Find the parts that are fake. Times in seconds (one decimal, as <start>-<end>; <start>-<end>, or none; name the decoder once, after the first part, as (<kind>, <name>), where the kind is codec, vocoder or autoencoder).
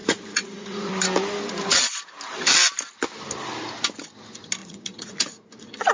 0.0-0.9 (vocoder, Vocos); 4.6-5.9